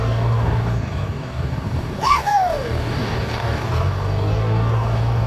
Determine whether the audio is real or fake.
fake